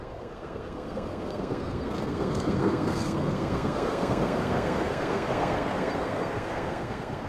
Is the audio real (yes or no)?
no